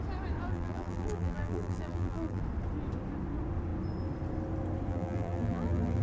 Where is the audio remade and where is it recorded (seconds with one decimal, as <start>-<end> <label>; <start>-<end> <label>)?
0.0-0.5 recorded; 0.5-2.4 remade; 2.4-4.9 recorded; 4.9-6.0 remade